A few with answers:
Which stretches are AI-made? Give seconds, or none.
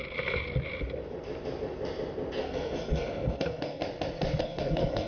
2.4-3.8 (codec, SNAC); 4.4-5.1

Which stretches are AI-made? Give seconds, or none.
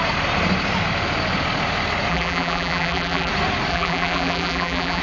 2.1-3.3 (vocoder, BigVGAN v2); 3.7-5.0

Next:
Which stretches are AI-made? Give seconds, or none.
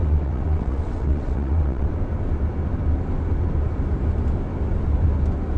0.0-1.9 (vocoder, WaveNeXt)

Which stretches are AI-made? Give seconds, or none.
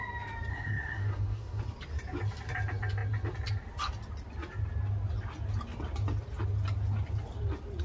0.5-1.6 (codec, SNAC)